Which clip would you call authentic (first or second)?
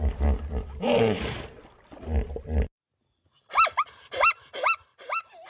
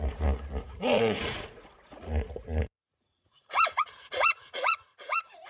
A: first